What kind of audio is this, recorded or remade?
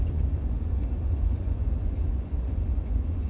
remade